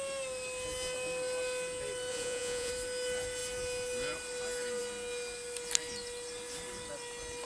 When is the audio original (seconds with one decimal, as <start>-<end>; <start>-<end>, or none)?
0.0-2.1; 2.7-7.5